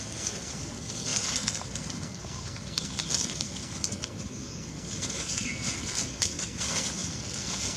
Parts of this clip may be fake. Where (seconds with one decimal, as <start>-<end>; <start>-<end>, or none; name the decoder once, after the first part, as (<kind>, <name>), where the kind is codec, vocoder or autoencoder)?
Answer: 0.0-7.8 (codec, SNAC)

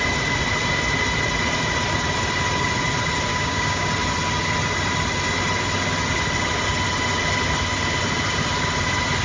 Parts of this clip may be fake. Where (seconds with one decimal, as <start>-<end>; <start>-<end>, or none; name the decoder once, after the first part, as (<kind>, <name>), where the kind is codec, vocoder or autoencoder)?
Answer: 3.3-3.9 (codec, DAC)

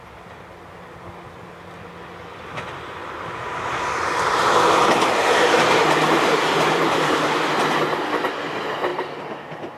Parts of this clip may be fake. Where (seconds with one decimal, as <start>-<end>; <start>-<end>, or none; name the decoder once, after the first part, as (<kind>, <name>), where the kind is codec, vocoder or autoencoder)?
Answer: 3.0-7.5 (vocoder, BigVGAN v2); 8.9-9.8

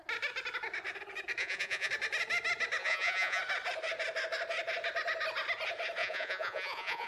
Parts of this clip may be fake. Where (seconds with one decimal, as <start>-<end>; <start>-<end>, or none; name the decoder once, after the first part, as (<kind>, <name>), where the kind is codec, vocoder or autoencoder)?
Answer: 1.4-1.9 (vocoder, Vocos); 2.8-3.4; 6.0-7.1